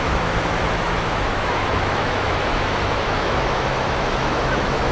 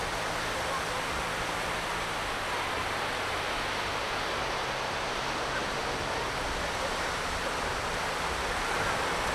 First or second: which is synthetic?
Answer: first